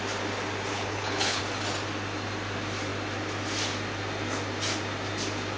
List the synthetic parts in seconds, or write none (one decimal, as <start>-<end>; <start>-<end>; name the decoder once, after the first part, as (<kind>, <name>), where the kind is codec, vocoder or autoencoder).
0.7-1.4 (codec, HILCodec)